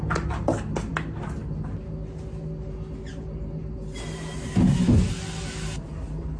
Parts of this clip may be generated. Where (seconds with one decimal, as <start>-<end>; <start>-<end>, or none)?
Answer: none